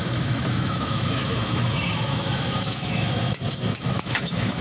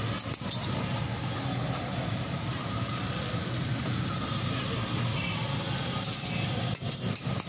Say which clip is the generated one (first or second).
first